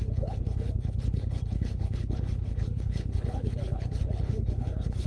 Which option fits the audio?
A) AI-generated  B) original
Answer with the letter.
A